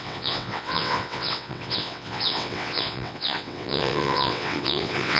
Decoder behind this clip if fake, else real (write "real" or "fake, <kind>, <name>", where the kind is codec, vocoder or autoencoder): fake, vocoder, WaveNeXt